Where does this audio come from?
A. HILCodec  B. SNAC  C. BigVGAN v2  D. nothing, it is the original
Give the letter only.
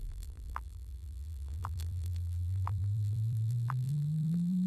C